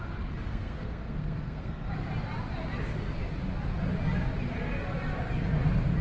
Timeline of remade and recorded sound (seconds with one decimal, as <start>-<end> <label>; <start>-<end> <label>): 0.0-0.5 recorded; 0.5-1.9 remade; 1.9-6.0 recorded